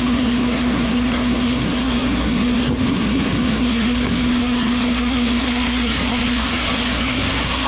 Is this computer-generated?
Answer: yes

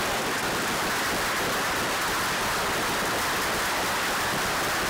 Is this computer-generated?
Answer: no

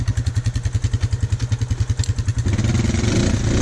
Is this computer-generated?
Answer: no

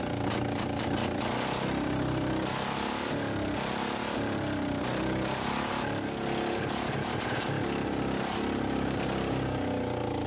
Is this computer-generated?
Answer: no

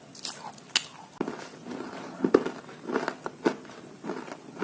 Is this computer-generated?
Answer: no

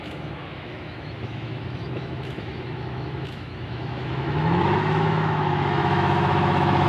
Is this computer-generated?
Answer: yes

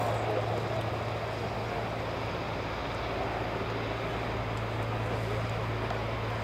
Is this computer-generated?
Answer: no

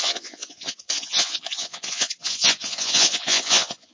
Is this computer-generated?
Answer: yes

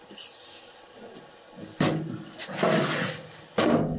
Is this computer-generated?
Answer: no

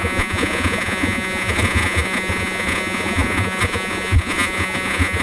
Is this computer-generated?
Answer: yes